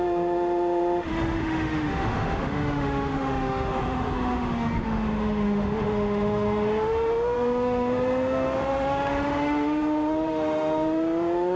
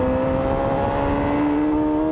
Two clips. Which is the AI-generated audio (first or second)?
first